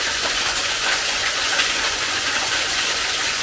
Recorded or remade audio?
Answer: remade